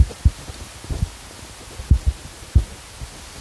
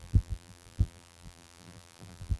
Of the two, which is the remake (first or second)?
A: second